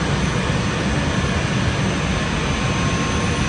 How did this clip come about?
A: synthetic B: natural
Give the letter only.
B